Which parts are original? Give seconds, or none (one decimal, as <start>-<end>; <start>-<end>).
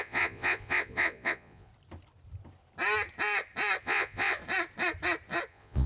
1.7-3.8; 4.4-5.5